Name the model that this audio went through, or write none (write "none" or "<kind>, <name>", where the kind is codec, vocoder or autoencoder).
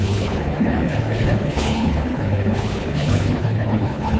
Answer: codec, HILCodec